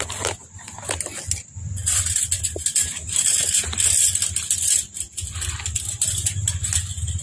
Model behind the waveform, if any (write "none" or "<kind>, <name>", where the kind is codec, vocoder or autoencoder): none